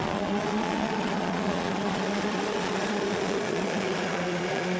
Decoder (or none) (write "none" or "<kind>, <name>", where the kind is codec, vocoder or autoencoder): vocoder, Vocos